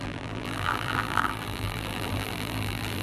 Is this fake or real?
fake